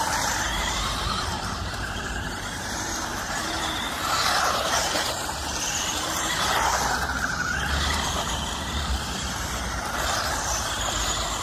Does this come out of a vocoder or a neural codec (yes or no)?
yes